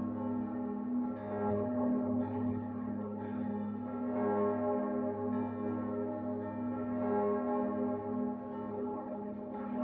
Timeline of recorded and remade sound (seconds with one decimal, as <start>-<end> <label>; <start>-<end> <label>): 0.0-1.5 recorded; 1.5-3.5 remade; 3.5-8.7 recorded; 8.7-9.8 remade